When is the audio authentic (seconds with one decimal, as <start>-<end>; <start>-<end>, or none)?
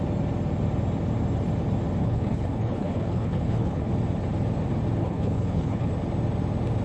0.0-2.0; 3.9-5.0; 5.9-6.8